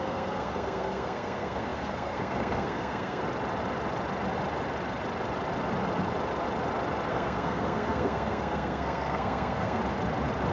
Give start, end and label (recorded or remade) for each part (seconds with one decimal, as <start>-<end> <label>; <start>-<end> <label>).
0.0-3.2 remade; 3.2-7.1 recorded; 7.1-9.8 remade; 9.8-10.5 recorded